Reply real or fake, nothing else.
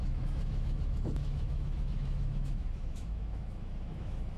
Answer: fake